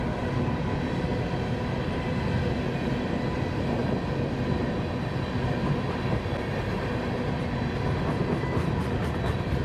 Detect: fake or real real